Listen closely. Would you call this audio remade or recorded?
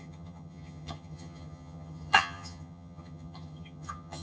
remade